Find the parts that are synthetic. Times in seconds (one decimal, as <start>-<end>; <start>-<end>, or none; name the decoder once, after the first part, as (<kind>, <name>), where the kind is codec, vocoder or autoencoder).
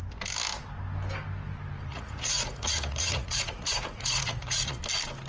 1.9-4.8 (vocoder, Vocos)